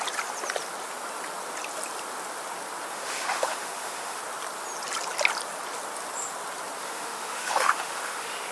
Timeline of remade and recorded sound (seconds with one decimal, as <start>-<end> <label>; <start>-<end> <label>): 0.0-2.9 recorded; 2.9-4.2 remade; 4.2-6.8 recorded; 6.8-8.5 remade

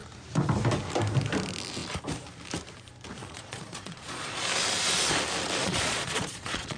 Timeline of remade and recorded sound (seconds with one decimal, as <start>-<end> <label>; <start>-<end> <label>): 0.0-3.2 recorded; 3.2-4.4 remade; 4.4-5.6 recorded; 5.6-6.8 remade